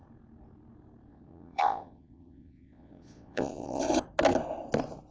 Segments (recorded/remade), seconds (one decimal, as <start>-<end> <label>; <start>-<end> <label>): 0.0-1.1 recorded; 1.1-3.8 remade; 3.8-5.1 recorded